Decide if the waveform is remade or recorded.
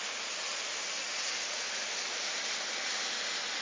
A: recorded